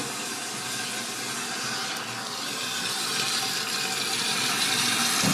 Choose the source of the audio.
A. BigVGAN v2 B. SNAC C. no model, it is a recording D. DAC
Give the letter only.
C